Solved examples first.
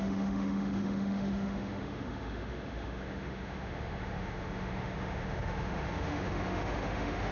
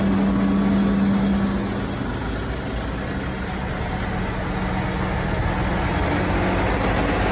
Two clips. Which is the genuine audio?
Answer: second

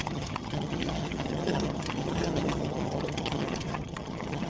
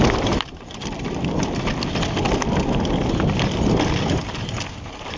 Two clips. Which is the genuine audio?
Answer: second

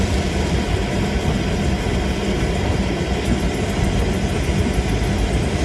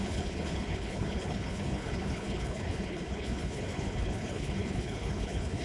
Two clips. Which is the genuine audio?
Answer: first